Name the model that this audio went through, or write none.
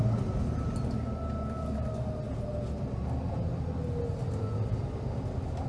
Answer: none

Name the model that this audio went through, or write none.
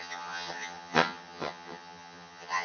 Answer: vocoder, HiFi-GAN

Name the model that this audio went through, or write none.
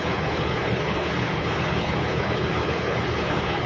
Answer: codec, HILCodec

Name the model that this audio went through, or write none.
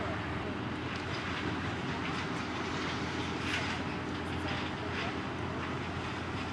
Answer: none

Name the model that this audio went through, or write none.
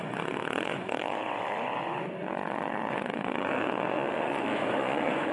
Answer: vocoder, Vocos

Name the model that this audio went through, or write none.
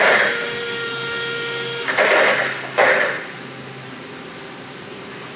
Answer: none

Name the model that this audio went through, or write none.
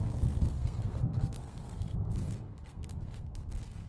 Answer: codec, SNAC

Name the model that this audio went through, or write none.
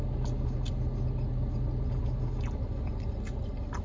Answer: none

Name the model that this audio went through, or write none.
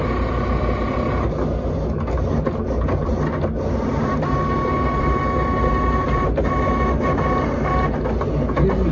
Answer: none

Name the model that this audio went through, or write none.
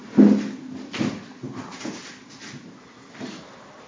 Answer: none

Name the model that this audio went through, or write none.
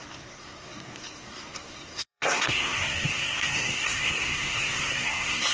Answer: codec, SNAC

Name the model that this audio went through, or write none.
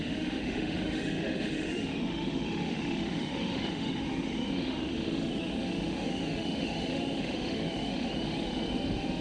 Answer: autoencoder, DAC-VAE